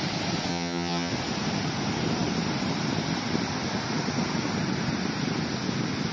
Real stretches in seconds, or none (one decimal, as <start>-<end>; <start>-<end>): 0.0-0.5; 1.1-6.1